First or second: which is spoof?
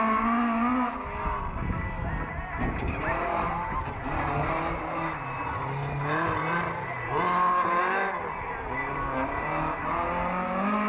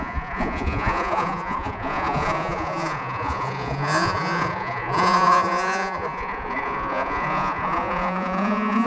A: second